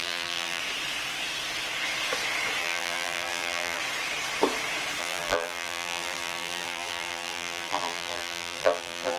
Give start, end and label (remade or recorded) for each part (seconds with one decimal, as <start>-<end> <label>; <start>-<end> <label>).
0.0-0.6 remade; 0.6-2.6 recorded; 2.6-3.8 remade; 3.8-5.0 recorded; 5.0-9.2 remade